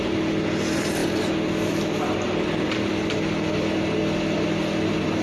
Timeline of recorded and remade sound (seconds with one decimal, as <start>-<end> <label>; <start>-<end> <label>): 0.0-5.2 recorded

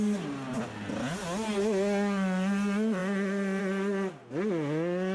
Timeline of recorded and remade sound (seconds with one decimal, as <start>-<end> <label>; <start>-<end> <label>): 0.0-5.1 recorded

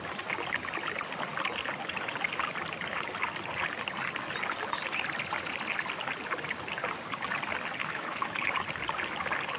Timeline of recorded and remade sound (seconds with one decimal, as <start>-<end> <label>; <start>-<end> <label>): 0.0-7.8 recorded; 7.8-8.5 remade; 8.5-9.6 recorded

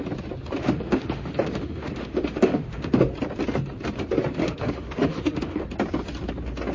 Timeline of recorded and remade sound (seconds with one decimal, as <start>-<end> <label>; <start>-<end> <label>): 0.0-0.6 recorded; 0.6-3.0 remade; 3.0-4.4 recorded; 4.4-5.6 remade; 5.6-6.7 recorded

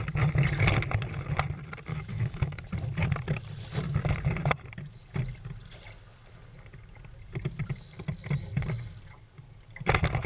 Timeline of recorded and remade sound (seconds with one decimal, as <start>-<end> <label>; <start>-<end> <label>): 0.0-1.9 recorded; 1.9-2.6 remade; 2.6-10.3 recorded

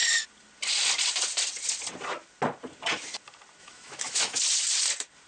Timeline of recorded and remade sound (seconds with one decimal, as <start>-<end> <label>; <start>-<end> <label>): 0.0-3.6 recorded; 3.6-4.4 remade; 4.4-5.3 recorded

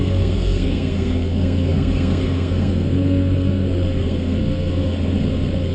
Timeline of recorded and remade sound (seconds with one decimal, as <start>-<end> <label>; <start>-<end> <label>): 0.0-5.7 remade